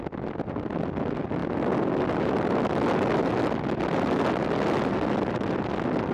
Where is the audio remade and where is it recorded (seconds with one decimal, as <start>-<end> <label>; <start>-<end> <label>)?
0.0-6.1 recorded